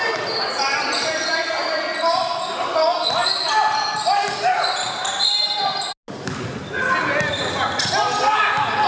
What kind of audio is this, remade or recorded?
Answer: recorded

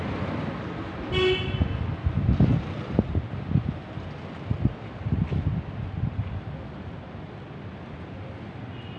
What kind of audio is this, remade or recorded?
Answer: recorded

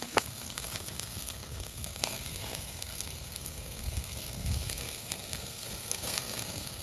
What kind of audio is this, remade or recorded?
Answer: remade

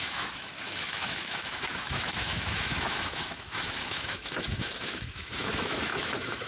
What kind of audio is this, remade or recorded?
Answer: remade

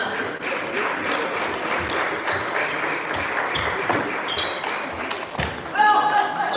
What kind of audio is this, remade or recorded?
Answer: recorded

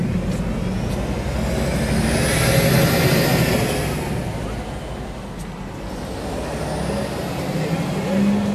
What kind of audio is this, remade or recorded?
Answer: recorded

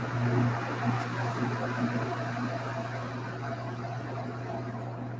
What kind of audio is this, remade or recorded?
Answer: recorded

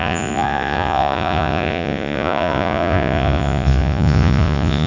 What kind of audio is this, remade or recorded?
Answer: remade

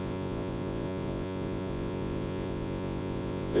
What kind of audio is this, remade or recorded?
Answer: remade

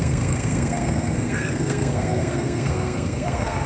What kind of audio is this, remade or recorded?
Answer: remade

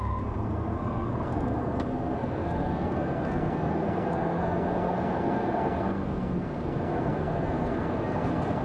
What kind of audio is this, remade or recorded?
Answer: remade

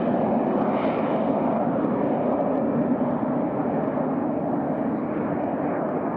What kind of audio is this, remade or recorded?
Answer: recorded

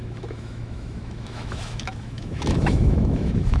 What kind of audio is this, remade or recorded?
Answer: remade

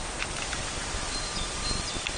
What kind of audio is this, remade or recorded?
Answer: recorded